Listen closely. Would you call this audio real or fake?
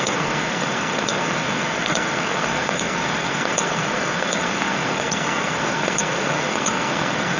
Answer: fake